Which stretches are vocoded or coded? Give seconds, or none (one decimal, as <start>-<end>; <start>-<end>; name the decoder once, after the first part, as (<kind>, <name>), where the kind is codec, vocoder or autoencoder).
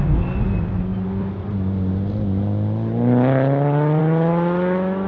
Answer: none